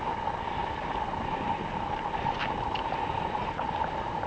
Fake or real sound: real